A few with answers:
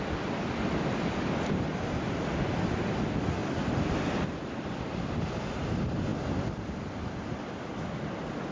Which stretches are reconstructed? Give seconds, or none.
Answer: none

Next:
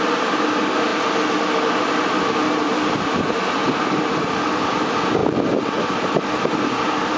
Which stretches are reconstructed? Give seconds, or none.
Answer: none

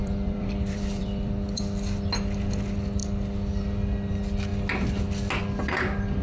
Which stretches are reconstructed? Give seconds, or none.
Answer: 0.0-1.6 (vocoder, BigVGAN v2)

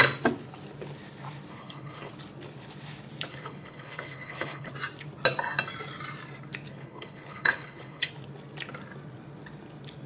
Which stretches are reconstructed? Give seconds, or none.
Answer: 1.5-2.1 (codec, HILCodec); 3.3-4.7; 6.7-8.1

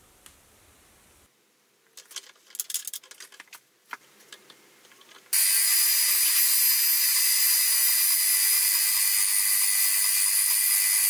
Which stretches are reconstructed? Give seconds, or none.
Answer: none

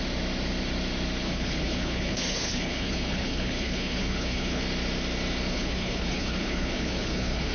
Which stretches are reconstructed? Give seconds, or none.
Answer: 1.2-4.6 (codec, HILCodec); 5.5-7.5